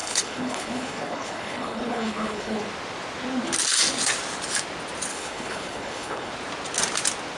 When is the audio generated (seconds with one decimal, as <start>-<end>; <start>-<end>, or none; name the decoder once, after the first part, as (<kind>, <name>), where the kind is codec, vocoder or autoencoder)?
0.0-2.7 (codec, HILCodec); 5.1-6.3